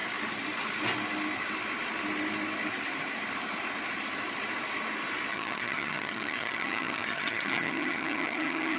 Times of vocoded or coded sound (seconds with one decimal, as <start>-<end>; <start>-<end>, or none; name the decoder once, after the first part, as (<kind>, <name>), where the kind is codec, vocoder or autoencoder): 5.3-8.8 (vocoder, HiFi-GAN)